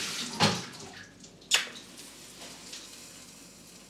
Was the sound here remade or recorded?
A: recorded